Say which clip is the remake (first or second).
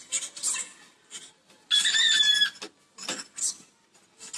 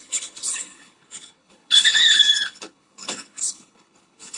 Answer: second